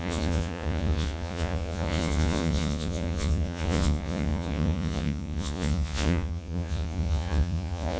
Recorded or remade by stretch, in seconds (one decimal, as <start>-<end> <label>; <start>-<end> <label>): 0.0-8.0 remade

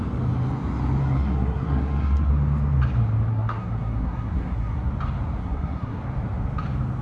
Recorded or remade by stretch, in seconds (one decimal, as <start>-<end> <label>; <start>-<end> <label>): 0.0-1.0 recorded; 1.0-2.3 remade; 2.3-3.3 recorded; 3.3-4.9 remade; 4.9-5.4 recorded; 5.4-6.0 remade; 6.0-7.0 recorded